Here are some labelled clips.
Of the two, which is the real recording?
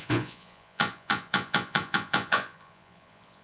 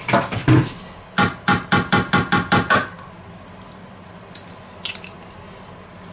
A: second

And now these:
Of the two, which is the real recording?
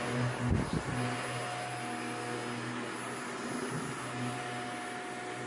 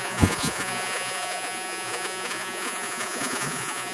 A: first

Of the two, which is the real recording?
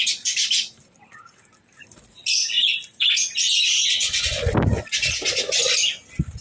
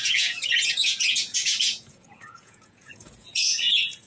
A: first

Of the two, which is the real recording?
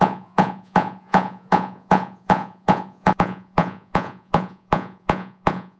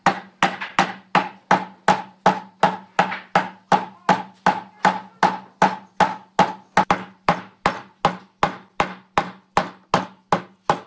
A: second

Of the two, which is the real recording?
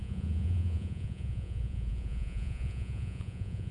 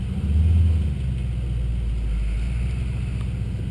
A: second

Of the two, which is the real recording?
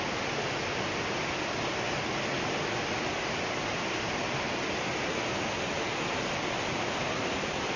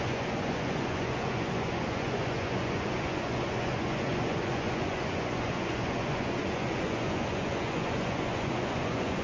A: first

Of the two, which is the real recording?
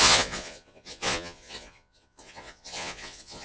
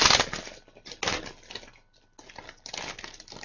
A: second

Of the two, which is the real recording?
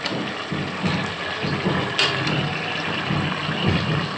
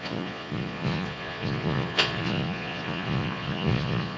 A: first